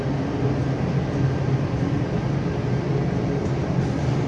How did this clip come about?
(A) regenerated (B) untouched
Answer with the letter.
B